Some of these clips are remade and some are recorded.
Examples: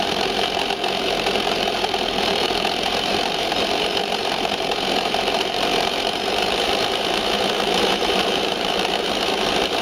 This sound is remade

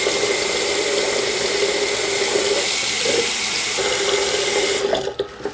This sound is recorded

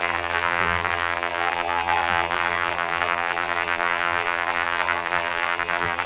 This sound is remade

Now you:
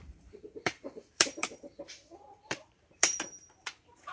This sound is remade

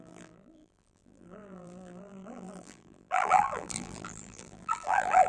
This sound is remade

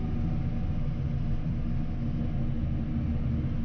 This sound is recorded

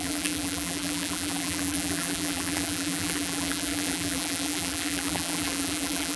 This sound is remade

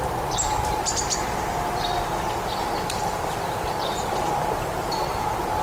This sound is remade